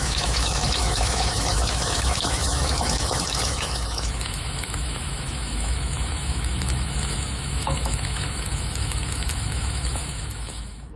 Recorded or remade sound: remade